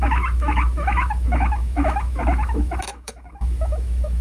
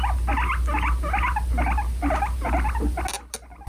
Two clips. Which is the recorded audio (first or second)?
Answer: second